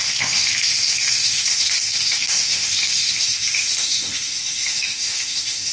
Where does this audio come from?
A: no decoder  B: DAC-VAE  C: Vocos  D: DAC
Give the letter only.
B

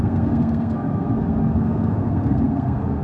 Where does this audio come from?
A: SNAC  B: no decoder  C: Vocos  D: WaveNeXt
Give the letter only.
A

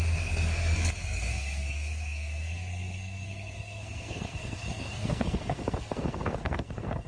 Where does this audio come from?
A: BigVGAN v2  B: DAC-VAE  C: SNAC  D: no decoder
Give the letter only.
C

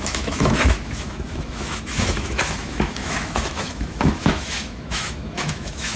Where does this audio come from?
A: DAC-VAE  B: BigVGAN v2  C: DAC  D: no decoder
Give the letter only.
A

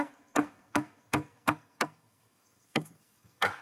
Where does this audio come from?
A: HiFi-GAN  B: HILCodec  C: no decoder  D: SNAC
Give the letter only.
D